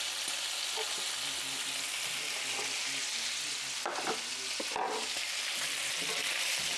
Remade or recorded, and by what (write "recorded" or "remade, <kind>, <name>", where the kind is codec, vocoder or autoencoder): recorded